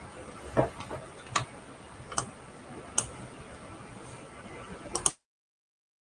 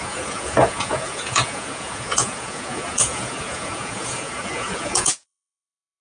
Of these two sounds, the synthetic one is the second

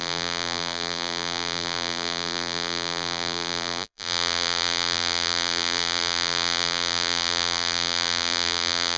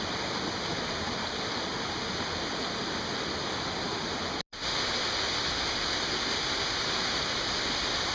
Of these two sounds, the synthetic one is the first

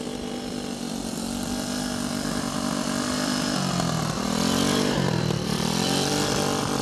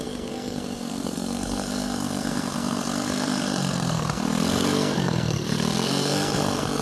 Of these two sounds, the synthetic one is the second